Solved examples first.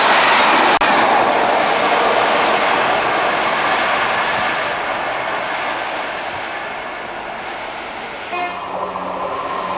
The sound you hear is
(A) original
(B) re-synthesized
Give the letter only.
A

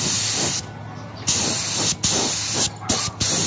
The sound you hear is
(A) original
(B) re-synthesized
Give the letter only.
A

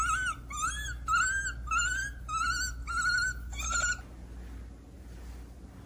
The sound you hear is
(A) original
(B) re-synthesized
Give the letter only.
A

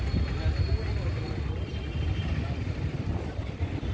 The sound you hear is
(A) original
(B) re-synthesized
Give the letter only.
A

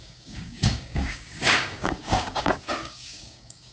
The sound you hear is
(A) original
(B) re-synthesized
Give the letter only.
B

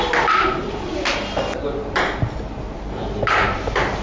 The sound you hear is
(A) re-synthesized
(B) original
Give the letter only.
B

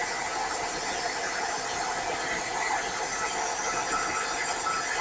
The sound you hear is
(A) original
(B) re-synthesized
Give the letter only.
A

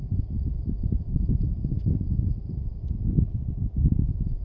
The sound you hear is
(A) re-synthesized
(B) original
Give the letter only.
B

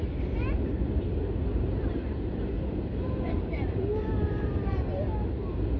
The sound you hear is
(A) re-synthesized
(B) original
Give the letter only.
A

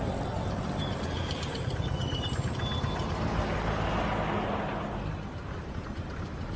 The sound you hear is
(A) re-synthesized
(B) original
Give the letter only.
B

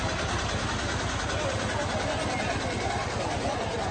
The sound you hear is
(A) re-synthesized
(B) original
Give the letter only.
B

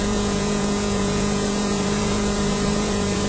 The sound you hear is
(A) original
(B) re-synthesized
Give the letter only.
B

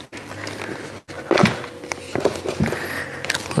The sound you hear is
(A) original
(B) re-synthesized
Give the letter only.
A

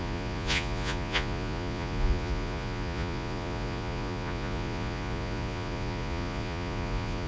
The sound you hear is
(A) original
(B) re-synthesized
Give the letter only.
B